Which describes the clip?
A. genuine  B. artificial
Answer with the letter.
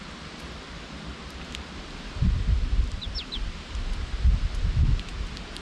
A